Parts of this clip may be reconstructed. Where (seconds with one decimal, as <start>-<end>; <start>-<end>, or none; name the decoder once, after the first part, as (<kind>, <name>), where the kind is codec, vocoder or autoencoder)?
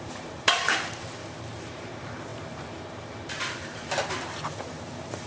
0.0-5.3 (vocoder, BigVGAN v2)